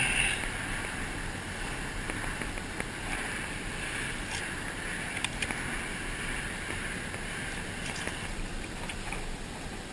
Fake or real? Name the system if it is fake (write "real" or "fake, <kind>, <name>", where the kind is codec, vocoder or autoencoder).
real